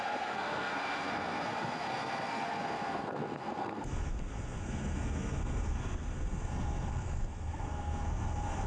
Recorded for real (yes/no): no